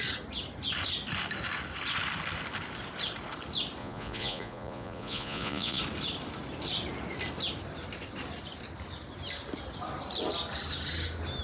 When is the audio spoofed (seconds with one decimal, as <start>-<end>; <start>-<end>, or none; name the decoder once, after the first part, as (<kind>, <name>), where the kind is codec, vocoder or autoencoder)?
3.8-5.8 (vocoder, Vocos)